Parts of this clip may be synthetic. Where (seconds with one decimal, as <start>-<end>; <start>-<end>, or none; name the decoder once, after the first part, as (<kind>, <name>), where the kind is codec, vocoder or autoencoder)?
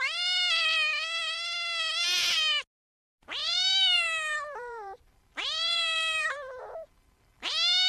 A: 3.4-6.6 (vocoder, BigVGAN v2)